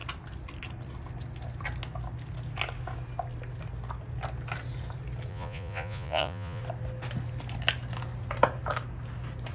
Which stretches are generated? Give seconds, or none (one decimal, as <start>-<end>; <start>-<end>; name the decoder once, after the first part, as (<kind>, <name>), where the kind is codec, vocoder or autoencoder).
5.3-6.6 (vocoder, Vocos)